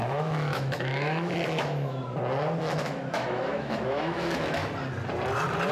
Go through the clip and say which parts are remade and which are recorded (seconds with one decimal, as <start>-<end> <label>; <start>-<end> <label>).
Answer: 0.0-2.0 remade; 2.0-2.6 recorded; 2.6-4.6 remade; 4.6-5.7 recorded